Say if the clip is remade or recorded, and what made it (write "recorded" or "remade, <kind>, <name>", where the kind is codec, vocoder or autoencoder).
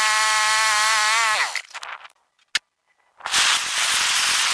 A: recorded